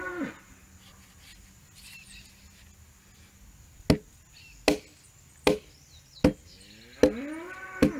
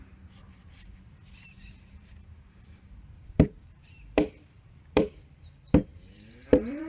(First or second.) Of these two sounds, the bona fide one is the first